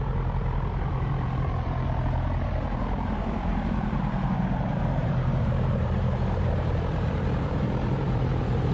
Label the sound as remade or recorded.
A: remade